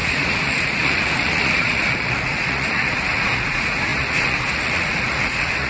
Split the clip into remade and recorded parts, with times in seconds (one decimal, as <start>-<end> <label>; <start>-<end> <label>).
0.0-5.7 remade